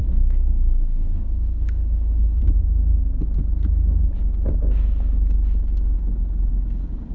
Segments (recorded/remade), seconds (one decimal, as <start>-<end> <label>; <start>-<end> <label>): 0.0-2.4 remade; 2.4-7.1 recorded